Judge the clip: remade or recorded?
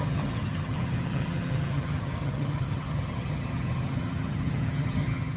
remade